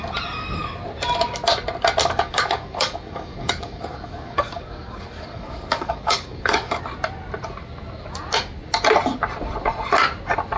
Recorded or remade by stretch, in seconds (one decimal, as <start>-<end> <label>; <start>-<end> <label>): 0.0-2.0 recorded; 2.0-6.8 remade; 6.8-10.6 recorded